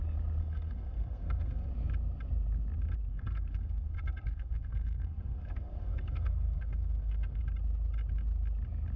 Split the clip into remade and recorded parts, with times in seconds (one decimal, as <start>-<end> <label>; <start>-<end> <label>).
0.0-0.4 recorded; 0.4-1.7 remade; 1.7-3.1 recorded; 3.1-7.4 remade; 7.4-9.0 recorded